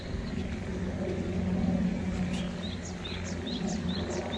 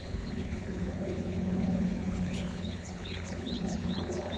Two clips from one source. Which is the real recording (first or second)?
first